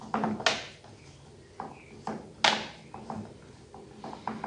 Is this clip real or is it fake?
real